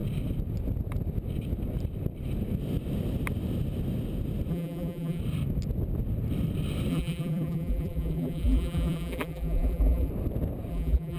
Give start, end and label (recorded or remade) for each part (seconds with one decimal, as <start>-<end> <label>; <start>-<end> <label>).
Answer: 0.0-4.5 recorded; 4.5-5.2 remade; 5.2-6.9 recorded; 6.9-10.1 remade; 10.1-10.7 recorded; 10.7-11.2 remade